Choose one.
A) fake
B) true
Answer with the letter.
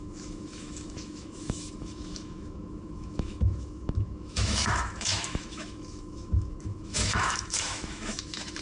A